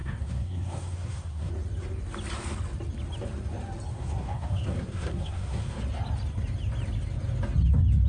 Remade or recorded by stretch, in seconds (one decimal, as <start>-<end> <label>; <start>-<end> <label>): 0.0-1.5 remade; 1.5-3.9 recorded; 3.9-5.8 remade; 5.8-8.1 recorded